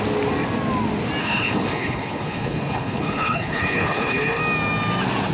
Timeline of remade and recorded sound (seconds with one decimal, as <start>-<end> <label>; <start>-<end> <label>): 0.0-1.2 recorded; 1.2-4.4 remade; 4.4-5.3 recorded